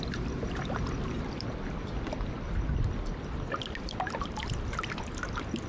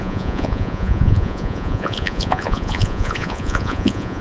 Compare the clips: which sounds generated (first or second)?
second